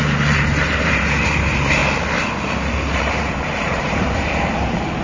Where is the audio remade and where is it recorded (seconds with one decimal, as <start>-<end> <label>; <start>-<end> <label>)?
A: 0.0-1.8 remade; 1.8-2.7 recorded; 2.7-5.0 remade